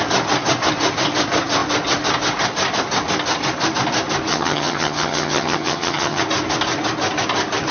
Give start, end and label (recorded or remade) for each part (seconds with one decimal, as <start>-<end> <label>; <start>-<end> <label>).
0.0-4.3 recorded; 4.3-6.2 remade; 6.2-7.7 recorded